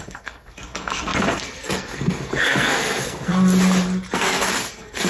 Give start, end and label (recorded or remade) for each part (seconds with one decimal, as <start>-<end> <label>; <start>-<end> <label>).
0.0-3.3 remade; 3.3-4.1 recorded; 4.1-5.1 remade